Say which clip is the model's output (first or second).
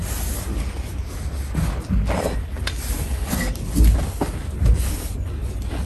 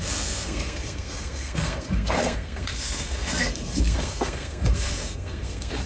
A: second